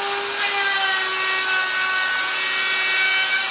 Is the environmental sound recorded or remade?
recorded